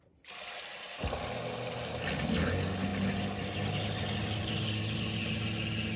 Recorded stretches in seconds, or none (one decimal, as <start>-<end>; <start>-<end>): 0.0-6.0